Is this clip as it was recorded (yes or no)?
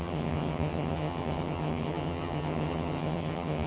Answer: no